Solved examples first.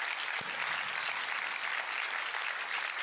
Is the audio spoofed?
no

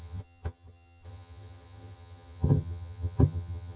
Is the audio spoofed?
yes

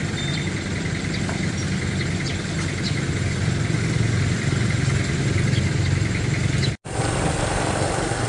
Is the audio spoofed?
no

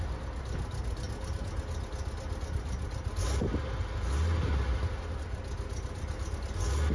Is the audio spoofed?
no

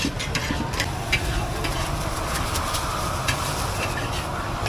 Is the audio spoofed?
yes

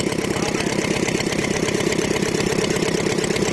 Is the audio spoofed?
no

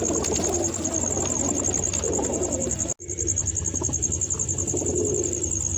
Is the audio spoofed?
no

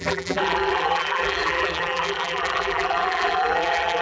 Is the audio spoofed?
yes